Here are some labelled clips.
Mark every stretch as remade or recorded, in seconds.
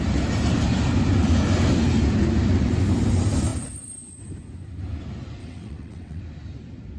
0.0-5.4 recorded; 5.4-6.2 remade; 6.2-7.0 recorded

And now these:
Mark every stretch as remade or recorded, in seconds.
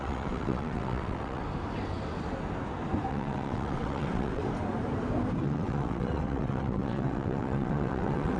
0.0-1.4 remade; 1.4-3.1 recorded; 3.1-4.4 remade; 4.4-5.4 recorded; 5.4-8.4 remade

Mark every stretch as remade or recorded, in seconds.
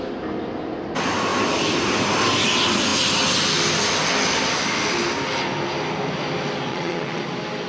0.0-6.7 recorded; 6.7-7.2 remade; 7.2-7.7 recorded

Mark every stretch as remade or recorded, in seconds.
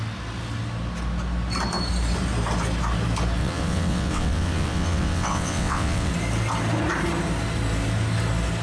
0.0-3.4 recorded; 3.4-6.1 remade; 6.1-8.6 recorded